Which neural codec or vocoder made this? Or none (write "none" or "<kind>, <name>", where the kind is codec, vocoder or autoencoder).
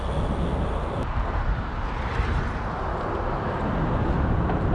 none